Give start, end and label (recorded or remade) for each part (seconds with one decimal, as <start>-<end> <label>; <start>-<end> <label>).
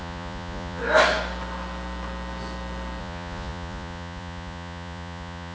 0.0-0.8 remade; 0.8-3.0 recorded; 3.0-5.5 remade